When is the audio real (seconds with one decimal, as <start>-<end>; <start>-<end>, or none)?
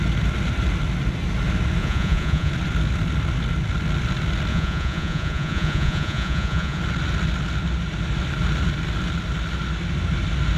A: 0.0-1.8; 2.5-4.5; 6.8-10.6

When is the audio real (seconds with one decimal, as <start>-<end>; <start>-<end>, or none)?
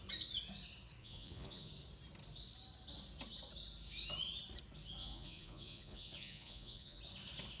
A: 0.0-1.0; 1.7-5.0; 7.0-7.6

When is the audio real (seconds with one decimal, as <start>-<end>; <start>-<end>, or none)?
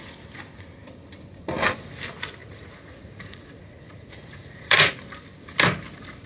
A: 0.0-2.4; 4.9-6.3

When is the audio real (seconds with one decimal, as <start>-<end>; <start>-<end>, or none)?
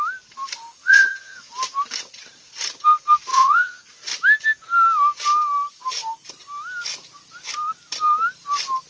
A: 0.0-0.8; 1.5-3.3; 3.9-8.9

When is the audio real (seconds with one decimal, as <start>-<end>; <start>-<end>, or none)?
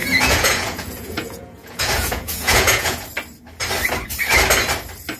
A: 3.0-5.2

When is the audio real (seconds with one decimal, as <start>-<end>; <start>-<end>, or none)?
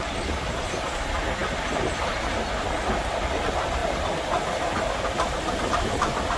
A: 0.0-6.4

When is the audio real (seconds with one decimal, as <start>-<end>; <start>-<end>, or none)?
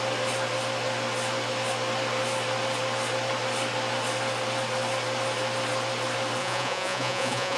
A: 0.0-6.4